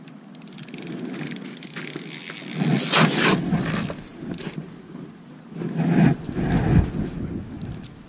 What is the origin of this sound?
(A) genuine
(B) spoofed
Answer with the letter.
A